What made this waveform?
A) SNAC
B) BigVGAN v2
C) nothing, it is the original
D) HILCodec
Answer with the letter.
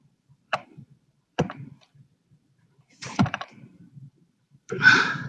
B